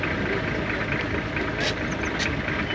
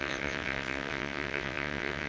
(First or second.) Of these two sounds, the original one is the first